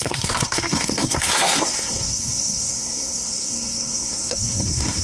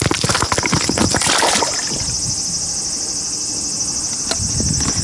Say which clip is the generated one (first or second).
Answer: first